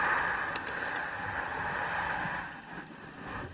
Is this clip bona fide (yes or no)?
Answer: yes